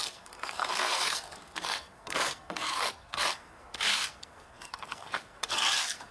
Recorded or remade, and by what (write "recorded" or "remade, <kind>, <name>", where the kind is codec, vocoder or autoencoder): remade, codec, SNAC